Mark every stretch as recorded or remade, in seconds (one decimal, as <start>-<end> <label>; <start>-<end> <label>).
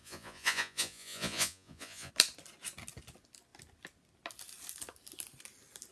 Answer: 0.0-2.1 remade; 2.1-5.9 recorded